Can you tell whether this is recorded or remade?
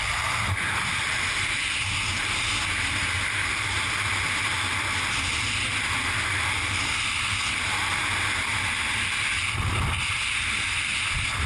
recorded